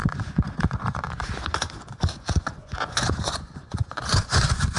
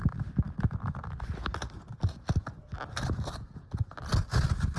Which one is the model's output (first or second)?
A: first